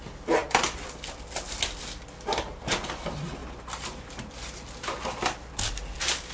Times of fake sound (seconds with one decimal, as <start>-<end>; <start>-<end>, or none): 3.4-4.2